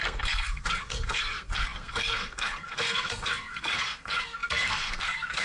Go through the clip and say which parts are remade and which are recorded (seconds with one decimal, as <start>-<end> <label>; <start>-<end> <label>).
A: 0.0-5.4 remade